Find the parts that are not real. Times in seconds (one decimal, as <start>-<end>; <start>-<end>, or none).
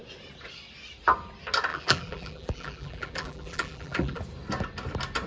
1.7-4.2